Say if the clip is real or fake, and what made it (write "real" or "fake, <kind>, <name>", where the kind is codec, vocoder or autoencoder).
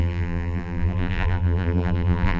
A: fake, vocoder, BigVGAN v2